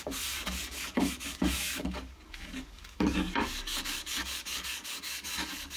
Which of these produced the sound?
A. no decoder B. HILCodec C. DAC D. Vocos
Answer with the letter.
C